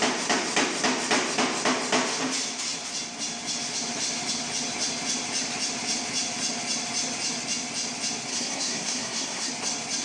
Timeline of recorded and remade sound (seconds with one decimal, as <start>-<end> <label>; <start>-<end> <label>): 0.0-8.3 recorded; 8.3-9.5 remade; 9.5-10.0 recorded